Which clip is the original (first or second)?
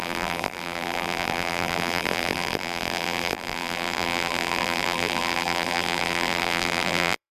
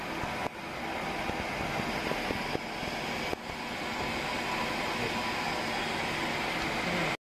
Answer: second